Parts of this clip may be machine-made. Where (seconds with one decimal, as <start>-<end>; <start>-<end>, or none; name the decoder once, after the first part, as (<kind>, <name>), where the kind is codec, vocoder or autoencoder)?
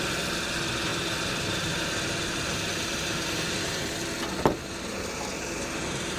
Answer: 0.9-3.8 (vocoder, BigVGAN v2); 4.9-6.2